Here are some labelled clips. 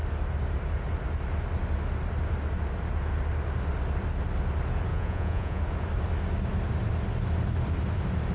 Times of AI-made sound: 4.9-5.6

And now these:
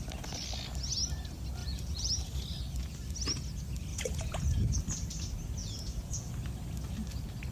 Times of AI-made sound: 1.6-2.1; 3.9-4.8; 5.6-6.3

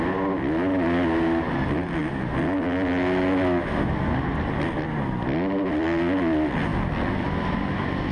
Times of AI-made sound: none

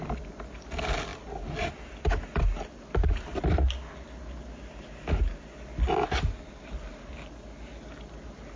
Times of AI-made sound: none